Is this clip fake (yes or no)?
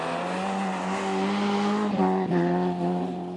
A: no